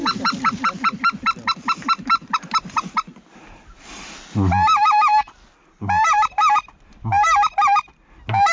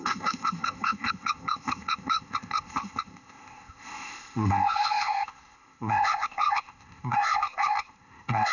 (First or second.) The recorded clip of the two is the first